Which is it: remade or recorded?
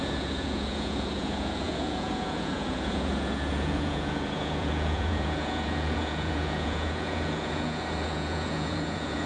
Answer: remade